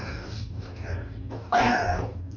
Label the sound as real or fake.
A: fake